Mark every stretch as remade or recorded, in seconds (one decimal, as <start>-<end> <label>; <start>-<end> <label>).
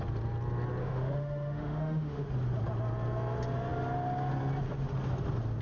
0.0-0.8 recorded; 0.8-2.3 remade; 2.3-5.6 recorded